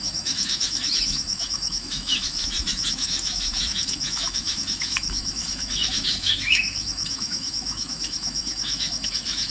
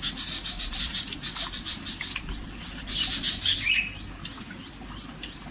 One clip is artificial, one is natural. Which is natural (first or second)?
second